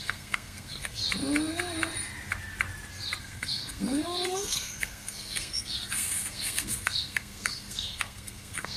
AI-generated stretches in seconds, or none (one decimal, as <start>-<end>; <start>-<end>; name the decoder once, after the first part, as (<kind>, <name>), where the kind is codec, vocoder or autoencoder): 0.0-1.0 (codec, SNAC); 3.2-8.8